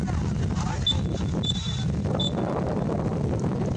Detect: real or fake real